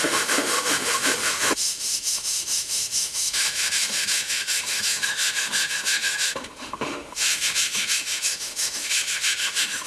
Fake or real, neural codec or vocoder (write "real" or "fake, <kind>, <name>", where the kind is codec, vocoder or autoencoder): fake, autoencoder, DAC-VAE